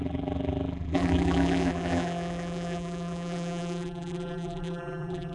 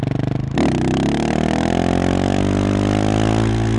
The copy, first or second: first